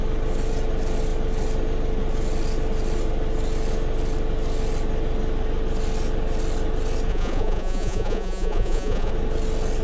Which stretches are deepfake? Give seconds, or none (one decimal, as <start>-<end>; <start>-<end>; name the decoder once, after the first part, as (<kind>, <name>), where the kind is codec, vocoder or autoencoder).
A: 7.1-9.1 (vocoder, Vocos)